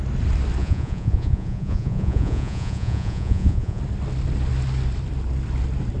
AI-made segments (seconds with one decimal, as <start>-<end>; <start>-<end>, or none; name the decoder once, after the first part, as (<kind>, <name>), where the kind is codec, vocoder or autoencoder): 0.6-3.8 (vocoder, Vocos)